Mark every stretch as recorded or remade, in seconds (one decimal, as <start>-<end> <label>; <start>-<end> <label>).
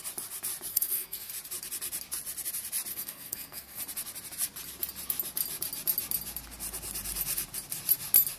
0.0-0.7 recorded; 0.7-1.3 remade; 1.3-2.9 recorded; 2.9-3.8 remade; 3.8-8.4 recorded